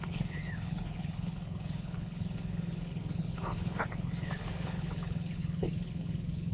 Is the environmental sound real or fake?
fake